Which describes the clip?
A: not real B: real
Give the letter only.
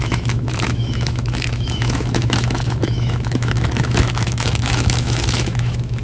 A